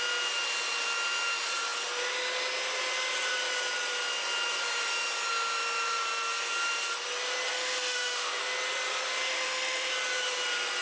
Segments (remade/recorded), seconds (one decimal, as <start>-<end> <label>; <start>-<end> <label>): 0.0-7.5 recorded; 7.5-8.4 remade; 8.4-9.3 recorded; 9.3-9.9 remade; 9.9-10.8 recorded